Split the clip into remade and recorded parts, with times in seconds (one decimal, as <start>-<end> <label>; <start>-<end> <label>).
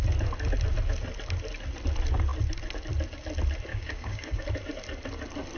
0.0-3.7 recorded; 3.7-4.4 remade; 4.4-5.6 recorded